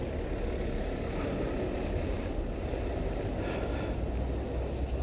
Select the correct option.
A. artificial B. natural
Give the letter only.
B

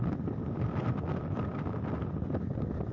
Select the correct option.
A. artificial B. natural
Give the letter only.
B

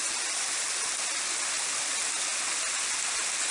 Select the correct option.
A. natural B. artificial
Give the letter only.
A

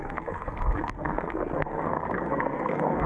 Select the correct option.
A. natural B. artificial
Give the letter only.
B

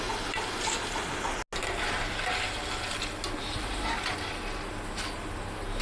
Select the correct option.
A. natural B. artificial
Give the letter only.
A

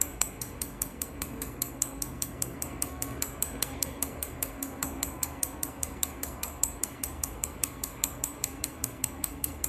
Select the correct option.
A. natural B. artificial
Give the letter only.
B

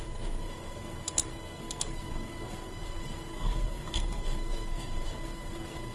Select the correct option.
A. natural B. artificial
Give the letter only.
B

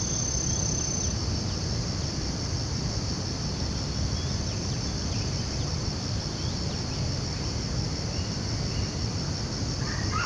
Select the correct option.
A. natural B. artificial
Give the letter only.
A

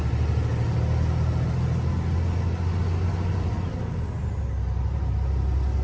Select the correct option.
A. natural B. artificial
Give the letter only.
A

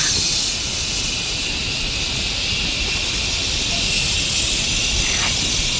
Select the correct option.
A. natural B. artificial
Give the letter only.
A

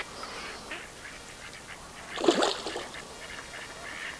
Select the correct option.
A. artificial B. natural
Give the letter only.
B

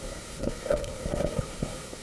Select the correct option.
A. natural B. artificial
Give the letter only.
B